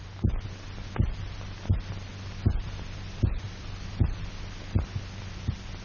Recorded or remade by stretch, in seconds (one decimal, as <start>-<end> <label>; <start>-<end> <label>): 0.0-5.8 recorded